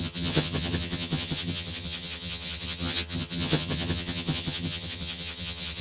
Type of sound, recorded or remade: remade